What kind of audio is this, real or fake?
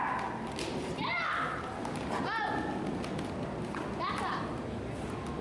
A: real